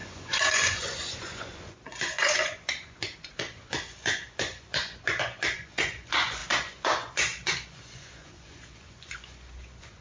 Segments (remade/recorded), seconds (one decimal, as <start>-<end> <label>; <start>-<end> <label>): 0.0-10.0 remade